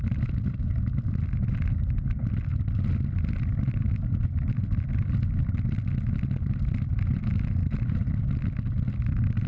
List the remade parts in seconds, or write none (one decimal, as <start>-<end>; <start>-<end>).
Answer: 7.6-8.1